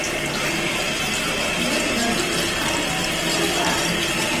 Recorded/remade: recorded